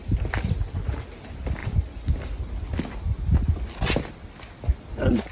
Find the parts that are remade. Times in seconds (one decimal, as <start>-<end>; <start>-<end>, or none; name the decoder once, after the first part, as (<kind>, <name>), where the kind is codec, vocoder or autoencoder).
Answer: none